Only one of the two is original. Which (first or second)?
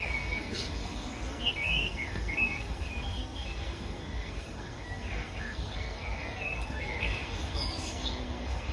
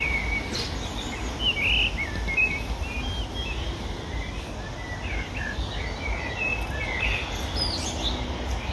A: second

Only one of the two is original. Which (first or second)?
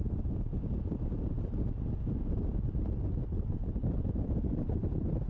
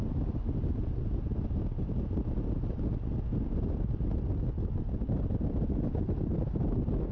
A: second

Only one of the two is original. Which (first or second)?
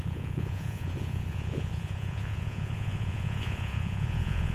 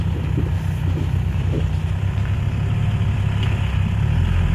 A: second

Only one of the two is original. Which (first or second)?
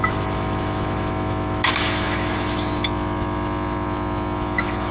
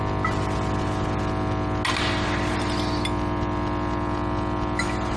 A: second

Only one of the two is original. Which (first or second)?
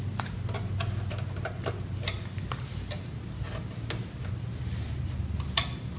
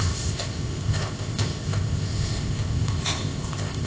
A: first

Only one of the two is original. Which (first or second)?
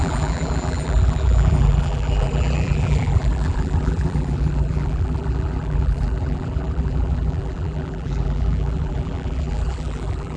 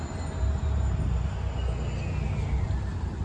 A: second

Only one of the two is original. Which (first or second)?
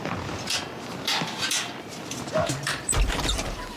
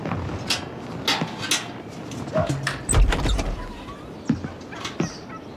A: second